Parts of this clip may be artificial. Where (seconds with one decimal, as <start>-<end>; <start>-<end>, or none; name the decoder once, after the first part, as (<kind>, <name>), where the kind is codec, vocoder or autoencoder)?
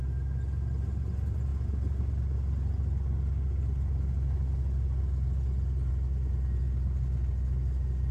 none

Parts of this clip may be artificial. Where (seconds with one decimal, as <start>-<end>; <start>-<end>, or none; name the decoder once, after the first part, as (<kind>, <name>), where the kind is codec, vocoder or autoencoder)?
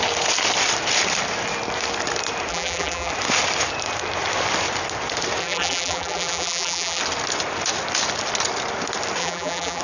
2.5-3.1 (vocoder, BigVGAN v2); 5.4-7.0; 9.2-9.8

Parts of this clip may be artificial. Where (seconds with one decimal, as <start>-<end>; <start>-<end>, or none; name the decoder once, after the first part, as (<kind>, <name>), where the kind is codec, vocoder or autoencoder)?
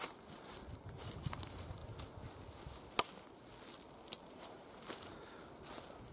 0.0-1.8 (vocoder, BigVGAN v2); 4.3-5.1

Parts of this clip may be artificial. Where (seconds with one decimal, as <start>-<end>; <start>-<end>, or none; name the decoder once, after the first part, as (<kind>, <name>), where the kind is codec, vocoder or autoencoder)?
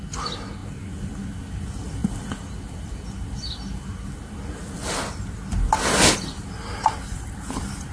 7.1-7.9 (vocoder, BigVGAN v2)